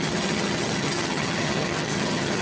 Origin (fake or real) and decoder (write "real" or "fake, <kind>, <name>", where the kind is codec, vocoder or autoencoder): fake, vocoder, HiFi-GAN